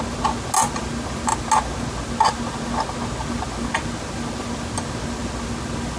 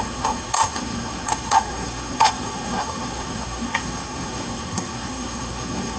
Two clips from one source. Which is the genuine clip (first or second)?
first